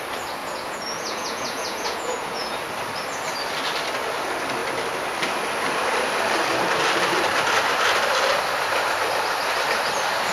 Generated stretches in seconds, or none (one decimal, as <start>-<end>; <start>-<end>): 0.4-2.6